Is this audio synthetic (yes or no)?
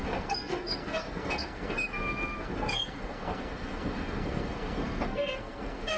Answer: yes